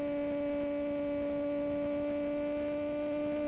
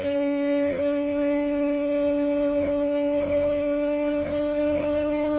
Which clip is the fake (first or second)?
second